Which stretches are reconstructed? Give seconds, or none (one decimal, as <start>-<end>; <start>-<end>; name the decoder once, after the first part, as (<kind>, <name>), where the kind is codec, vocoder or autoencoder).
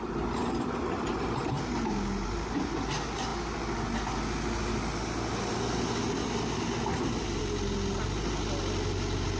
none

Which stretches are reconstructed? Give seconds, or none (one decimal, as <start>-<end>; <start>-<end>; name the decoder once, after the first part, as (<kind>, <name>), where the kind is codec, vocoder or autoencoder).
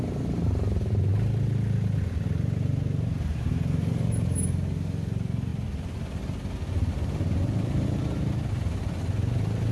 none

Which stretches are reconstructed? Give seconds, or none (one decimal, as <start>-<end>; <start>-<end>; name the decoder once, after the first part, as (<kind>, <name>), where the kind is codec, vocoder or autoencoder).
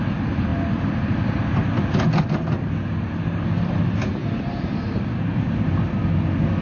4.2-5.6 (vocoder, BigVGAN v2)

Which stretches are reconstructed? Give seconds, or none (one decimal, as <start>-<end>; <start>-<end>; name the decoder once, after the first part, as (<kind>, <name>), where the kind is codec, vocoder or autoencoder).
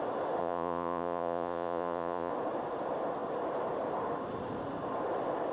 0.4-2.3 (vocoder, Vocos)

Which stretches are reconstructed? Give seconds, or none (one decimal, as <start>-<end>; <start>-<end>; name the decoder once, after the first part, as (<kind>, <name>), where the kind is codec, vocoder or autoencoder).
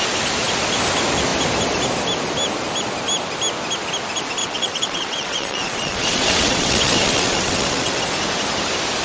4.4-8.0 (vocoder, WaveNeXt)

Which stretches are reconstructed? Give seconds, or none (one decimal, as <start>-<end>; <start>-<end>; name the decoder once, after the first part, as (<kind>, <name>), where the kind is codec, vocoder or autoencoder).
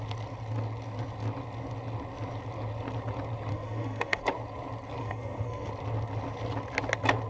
3.5-4.2 (codec, SNAC); 5.0-5.7